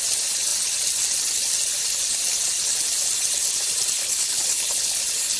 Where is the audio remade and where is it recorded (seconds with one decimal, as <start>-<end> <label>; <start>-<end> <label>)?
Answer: 0.0-4.0 recorded; 4.0-5.0 remade; 5.0-5.4 recorded